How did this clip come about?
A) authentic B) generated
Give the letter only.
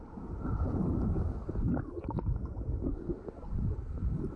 A